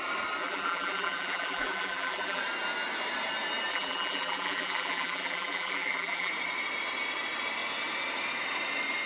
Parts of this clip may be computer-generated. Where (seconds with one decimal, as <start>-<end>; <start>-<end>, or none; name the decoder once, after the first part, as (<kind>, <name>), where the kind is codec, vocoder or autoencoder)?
0.4-2.4 (vocoder, BigVGAN v2); 3.7-6.3